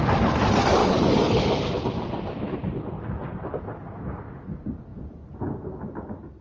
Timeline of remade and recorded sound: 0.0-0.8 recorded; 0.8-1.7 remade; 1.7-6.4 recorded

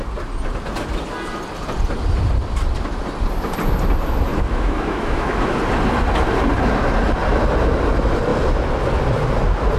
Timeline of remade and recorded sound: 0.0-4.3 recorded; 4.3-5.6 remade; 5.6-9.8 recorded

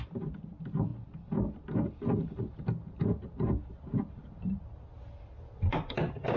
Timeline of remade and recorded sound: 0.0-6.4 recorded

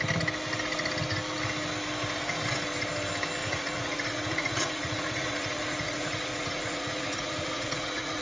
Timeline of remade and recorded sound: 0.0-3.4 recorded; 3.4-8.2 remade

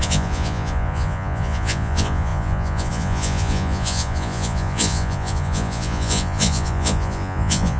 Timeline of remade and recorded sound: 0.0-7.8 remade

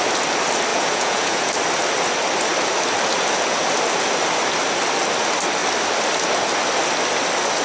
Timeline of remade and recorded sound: 0.0-0.7 recorded; 0.7-1.5 remade; 1.5-7.6 recorded

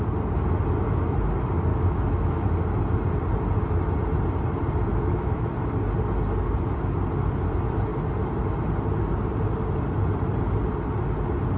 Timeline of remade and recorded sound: 0.0-1.7 recorded; 1.7-2.5 remade; 2.5-4.9 recorded; 4.9-5.5 remade; 5.5-11.6 recorded

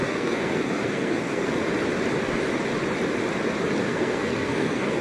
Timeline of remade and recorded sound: 0.0-1.5 remade; 1.5-3.8 recorded; 3.8-5.0 remade